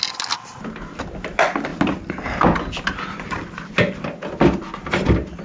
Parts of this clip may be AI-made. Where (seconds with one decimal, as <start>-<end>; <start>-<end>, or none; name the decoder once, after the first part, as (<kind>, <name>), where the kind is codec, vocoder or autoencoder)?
none